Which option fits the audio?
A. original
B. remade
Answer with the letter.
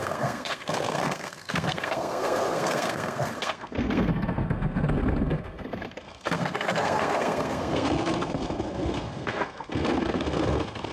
B